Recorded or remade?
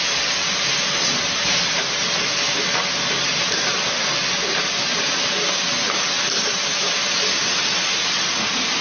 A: recorded